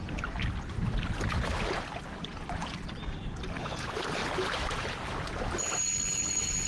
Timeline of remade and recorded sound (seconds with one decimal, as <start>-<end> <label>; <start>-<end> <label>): 0.0-6.7 recorded